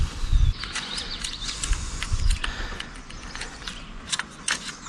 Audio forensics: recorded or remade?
remade